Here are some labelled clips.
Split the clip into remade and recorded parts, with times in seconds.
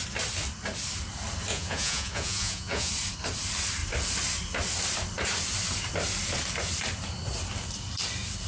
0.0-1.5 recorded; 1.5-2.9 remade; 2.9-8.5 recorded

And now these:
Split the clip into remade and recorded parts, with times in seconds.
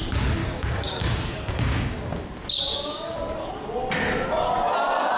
0.0-0.4 recorded; 0.4-2.2 remade; 2.2-2.7 recorded; 2.7-3.2 remade; 3.2-5.2 recorded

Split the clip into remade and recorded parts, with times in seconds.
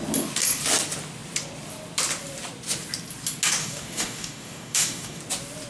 0.0-3.6 recorded; 3.6-5.2 remade; 5.2-5.7 recorded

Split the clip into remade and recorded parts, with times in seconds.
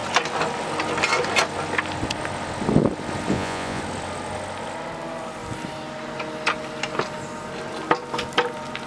0.0-3.3 recorded; 3.3-3.8 remade; 3.8-8.9 recorded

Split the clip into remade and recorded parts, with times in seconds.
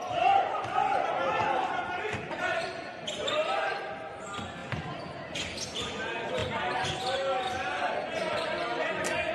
0.0-9.3 recorded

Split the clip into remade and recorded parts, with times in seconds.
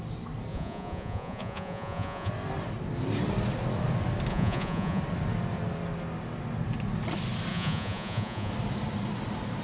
0.0-0.5 recorded; 0.5-2.3 remade; 2.3-4.3 recorded; 4.3-5.0 remade; 5.0-7.5 recorded; 7.5-8.5 remade; 8.5-9.6 recorded